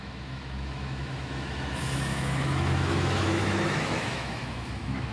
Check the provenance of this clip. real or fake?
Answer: fake